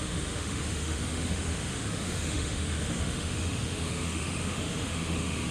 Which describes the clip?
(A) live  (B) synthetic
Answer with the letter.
B